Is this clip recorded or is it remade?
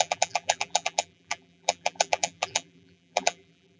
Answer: remade